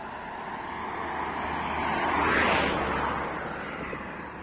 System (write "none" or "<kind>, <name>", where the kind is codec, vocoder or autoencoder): none